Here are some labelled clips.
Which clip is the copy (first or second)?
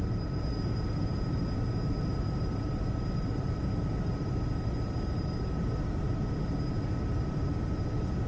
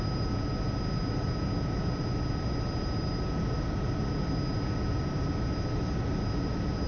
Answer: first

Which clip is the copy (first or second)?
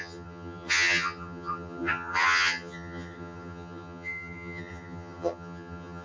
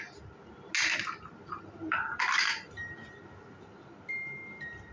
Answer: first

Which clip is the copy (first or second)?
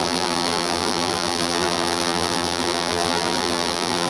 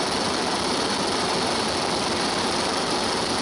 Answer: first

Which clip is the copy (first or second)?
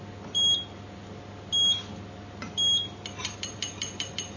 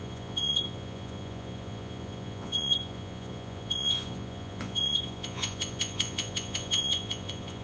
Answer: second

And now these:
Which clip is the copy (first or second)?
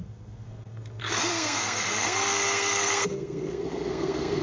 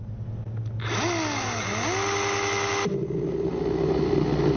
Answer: first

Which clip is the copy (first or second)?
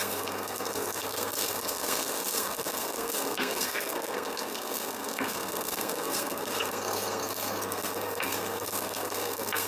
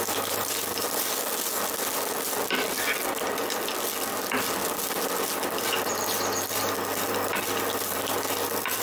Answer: first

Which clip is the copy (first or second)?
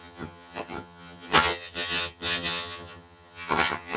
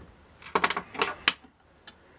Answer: first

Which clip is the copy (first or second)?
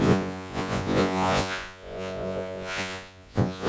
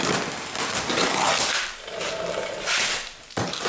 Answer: first